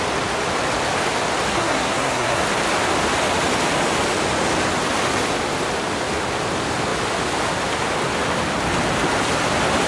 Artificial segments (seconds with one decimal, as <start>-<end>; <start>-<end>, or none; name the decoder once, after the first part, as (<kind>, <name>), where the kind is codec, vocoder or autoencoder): 1.5-2.4 (codec, SNAC)